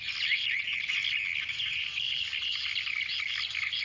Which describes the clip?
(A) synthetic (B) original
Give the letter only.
B